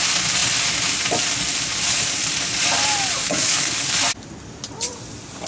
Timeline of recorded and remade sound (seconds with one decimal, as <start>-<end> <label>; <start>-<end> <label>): 0.0-3.2 recorded; 3.2-3.9 remade; 3.9-5.5 recorded